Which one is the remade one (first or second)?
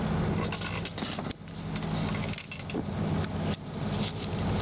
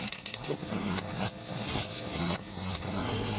second